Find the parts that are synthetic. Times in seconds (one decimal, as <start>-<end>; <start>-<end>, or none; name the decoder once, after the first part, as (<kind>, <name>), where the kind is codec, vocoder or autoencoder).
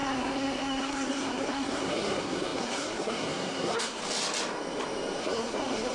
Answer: 0.0-4.0 (codec, SNAC); 5.2-5.9